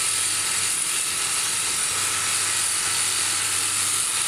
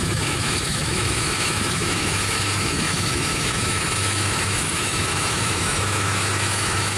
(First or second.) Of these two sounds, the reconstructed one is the second